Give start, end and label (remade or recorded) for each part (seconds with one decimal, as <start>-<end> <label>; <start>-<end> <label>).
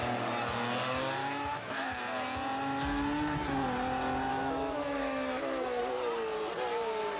0.0-1.2 recorded; 1.2-2.0 remade; 2.0-4.3 recorded; 4.3-5.8 remade; 5.8-7.2 recorded